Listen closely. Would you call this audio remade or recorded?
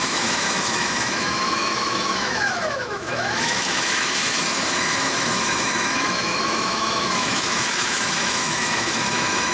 remade